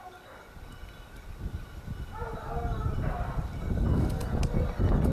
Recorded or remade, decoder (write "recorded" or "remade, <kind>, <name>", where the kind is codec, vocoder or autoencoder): recorded